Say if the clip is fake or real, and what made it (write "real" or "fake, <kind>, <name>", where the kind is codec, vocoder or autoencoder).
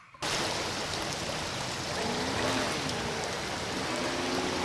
real